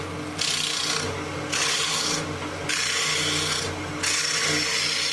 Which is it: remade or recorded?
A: recorded